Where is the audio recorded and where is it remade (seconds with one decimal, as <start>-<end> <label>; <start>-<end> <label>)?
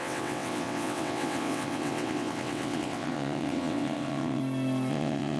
0.0-4.4 remade; 4.4-4.9 recorded; 4.9-5.4 remade